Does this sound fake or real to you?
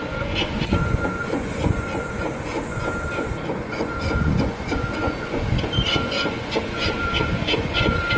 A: fake